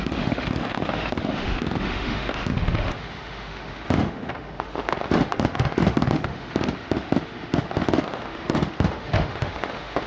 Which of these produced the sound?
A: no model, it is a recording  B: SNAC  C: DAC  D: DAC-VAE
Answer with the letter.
D